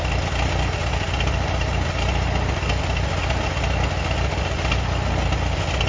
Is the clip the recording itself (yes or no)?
yes